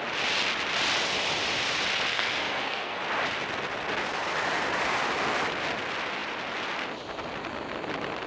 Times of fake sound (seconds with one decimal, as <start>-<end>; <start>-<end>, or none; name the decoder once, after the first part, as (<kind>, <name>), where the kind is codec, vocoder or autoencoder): 2.1-3.0 (codec, SNAC)